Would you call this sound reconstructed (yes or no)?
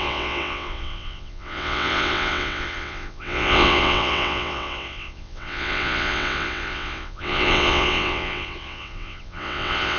yes